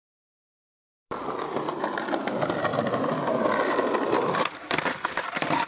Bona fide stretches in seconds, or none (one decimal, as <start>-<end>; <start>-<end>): 0.0-1.0; 1.7-2.7

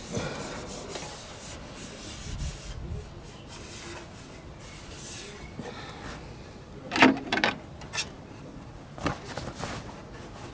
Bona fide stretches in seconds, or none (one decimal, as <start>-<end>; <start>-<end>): 0.0-10.5

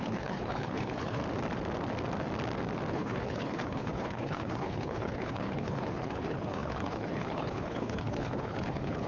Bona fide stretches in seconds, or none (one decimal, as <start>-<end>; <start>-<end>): 1.2-2.9

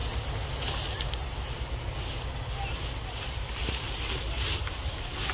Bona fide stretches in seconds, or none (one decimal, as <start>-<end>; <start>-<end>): 0.0-5.3

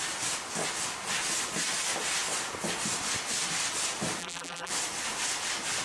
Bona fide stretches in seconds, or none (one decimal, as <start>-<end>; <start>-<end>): 0.0-4.2; 4.7-5.8